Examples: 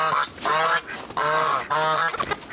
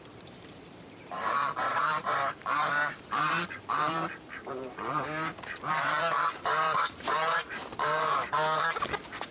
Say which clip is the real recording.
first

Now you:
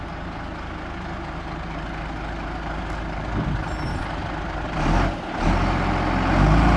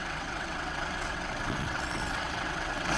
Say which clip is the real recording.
first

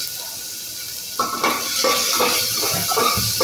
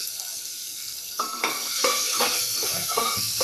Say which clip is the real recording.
first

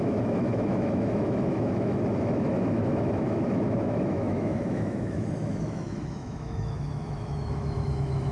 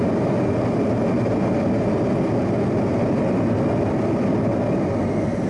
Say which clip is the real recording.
second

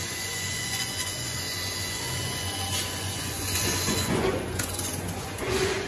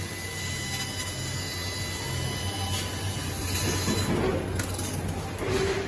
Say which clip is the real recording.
second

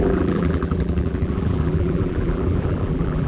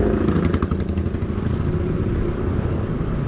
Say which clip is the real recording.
second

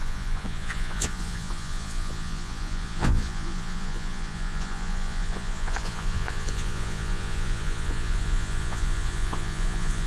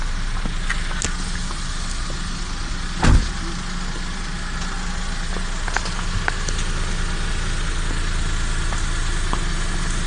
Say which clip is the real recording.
second